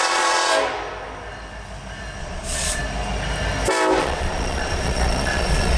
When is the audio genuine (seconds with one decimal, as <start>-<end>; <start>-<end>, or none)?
0.5-2.2; 2.8-4.0